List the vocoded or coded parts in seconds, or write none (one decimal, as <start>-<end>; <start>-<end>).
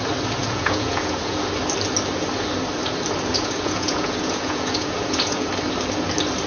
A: 0.4-1.5; 3.3-5.5